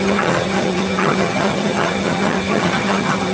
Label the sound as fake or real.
fake